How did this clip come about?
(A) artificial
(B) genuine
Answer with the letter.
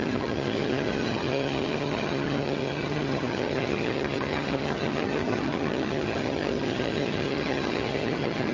A